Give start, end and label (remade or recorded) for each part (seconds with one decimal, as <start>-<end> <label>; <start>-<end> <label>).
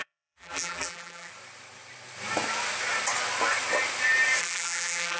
0.0-1.3 remade; 1.3-4.4 recorded; 4.4-5.2 remade